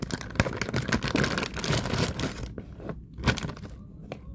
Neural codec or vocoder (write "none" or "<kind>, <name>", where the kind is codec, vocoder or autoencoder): none